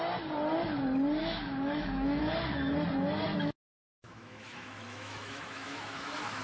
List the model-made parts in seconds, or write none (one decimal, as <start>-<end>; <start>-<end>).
1.2-2.2; 3.3-6.4